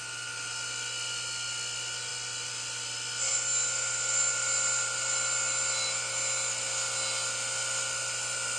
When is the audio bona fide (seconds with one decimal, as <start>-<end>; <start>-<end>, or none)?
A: 0.0-8.6